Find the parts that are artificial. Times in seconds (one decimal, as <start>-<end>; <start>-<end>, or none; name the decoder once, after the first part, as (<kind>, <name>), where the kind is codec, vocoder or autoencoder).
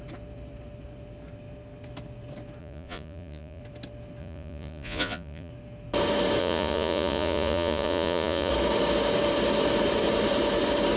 2.6-3.6 (vocoder, Vocos); 4.2-5.5; 6.4-8.5